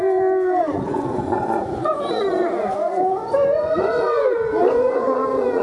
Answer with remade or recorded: remade